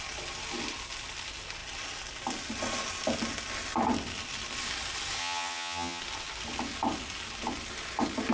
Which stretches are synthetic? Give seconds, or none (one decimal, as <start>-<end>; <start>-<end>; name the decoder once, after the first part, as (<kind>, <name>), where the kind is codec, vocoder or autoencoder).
5.2-6.0 (vocoder, HiFi-GAN)